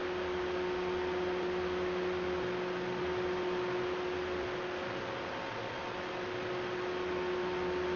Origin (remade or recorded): recorded